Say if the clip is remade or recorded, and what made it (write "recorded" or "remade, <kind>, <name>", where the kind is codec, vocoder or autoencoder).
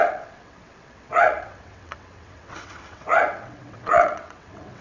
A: remade, vocoder, WaveNeXt